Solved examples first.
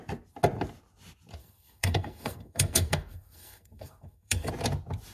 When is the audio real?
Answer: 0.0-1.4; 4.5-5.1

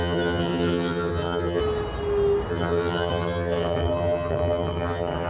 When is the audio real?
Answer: 1.6-2.5

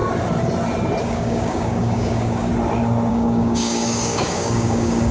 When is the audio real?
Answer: 0.0-1.0; 2.5-3.1

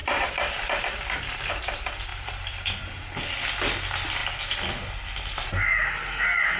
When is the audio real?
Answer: 1.5-2.1; 2.6-6.6